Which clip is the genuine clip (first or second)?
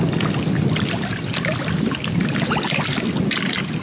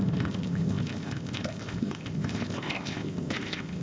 first